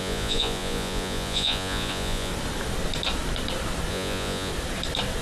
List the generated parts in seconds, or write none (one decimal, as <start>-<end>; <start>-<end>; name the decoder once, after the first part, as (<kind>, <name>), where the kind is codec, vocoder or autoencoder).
0.0-2.3 (vocoder, Vocos); 3.9-4.5